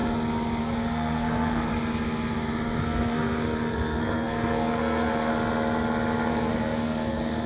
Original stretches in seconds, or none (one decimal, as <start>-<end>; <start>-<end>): 0.0-0.6; 1.7-2.8; 5.3-6.3

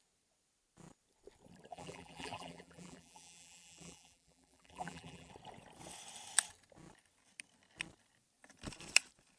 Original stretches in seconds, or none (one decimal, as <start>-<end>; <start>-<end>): 0.0-1.7; 5.3-9.4

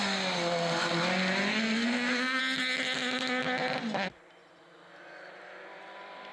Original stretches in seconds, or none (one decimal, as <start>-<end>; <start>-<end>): 0.0-1.5; 2.4-6.3

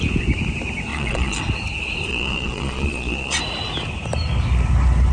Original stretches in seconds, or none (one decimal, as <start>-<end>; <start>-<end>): 0.0-0.9; 1.4-2.1; 3.4-5.1